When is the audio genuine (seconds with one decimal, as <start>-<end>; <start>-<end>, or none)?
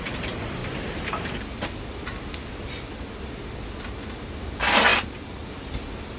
0.0-6.2